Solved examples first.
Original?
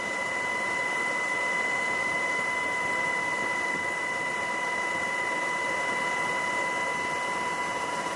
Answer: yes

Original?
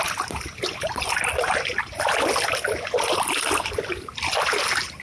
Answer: yes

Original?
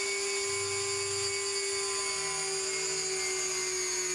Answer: yes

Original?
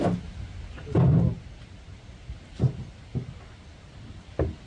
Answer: yes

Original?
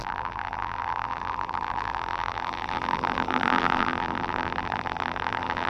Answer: no